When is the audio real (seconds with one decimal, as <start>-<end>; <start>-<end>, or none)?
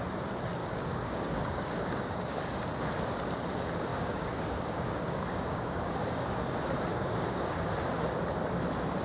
0.0-0.6; 2.4-3.9; 6.5-6.9; 7.7-9.0